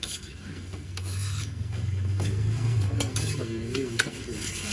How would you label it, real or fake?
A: fake